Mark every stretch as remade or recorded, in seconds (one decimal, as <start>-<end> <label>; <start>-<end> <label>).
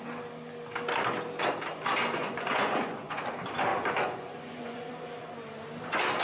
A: 0.0-2.2 recorded; 2.2-3.2 remade; 3.2-3.7 recorded; 3.7-4.9 remade; 4.9-6.2 recorded